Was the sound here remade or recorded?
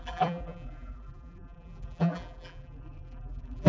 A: remade